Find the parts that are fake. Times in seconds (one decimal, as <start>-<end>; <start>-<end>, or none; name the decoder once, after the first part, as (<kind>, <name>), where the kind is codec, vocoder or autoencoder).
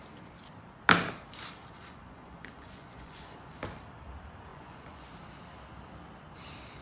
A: 1.6-3.5 (vocoder, Vocos); 4.5-5.1